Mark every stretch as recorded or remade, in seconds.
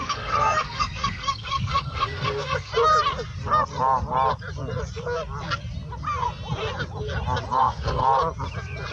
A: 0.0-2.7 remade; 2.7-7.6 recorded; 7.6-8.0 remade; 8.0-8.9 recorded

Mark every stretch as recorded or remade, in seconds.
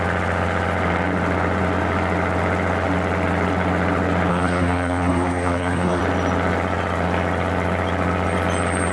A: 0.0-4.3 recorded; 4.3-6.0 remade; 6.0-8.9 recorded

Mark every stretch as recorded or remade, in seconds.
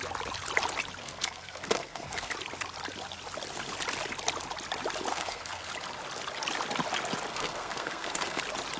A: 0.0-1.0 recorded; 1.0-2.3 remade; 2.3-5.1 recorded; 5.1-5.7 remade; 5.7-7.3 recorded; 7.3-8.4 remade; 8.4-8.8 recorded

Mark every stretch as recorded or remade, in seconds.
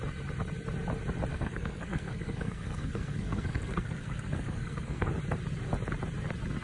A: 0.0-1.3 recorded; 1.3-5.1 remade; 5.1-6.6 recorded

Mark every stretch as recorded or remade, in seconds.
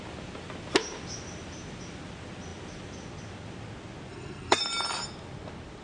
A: 0.0-4.1 recorded; 4.1-4.6 remade; 4.6-5.8 recorded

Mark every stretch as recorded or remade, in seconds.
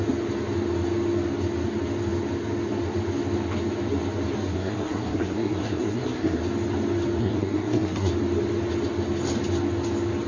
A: 0.0-4.5 recorded; 4.5-6.4 remade; 6.4-7.2 recorded; 7.2-8.1 remade; 8.1-10.3 recorded